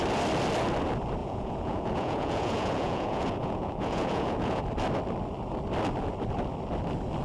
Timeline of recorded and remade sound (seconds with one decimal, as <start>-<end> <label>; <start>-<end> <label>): 0.0-1.2 recorded; 1.2-4.6 remade; 4.6-7.2 recorded